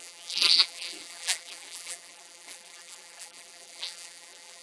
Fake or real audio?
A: fake